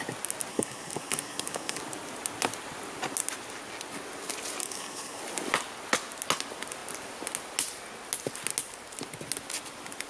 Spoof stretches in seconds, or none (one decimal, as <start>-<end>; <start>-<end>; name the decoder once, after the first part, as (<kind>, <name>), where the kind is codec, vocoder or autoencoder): 0.5-1.8 (codec, DAC); 4.6-5.2